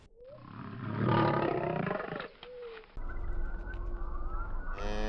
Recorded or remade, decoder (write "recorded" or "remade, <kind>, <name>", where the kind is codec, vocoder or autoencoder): recorded